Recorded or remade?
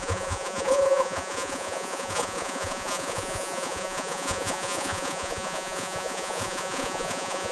remade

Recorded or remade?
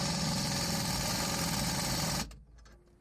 recorded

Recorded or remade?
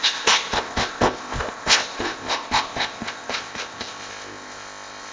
remade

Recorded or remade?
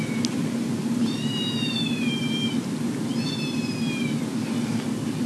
recorded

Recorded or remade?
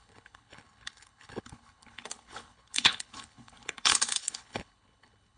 remade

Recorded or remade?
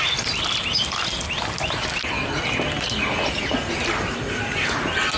recorded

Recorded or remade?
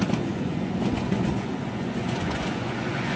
remade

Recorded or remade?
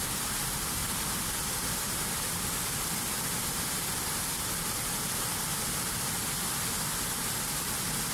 recorded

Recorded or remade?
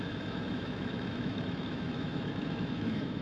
remade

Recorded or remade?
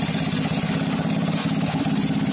recorded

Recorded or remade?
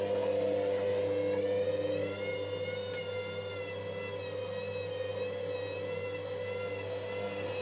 recorded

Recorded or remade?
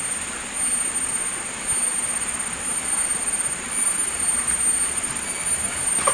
recorded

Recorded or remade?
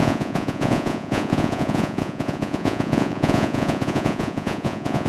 remade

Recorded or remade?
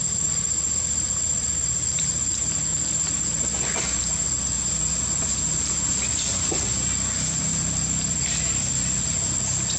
recorded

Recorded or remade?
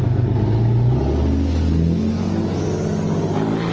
recorded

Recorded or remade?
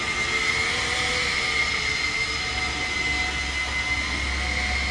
recorded